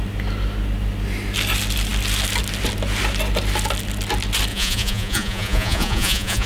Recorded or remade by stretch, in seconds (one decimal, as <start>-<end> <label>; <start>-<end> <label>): 0.0-4.5 recorded; 4.5-6.5 remade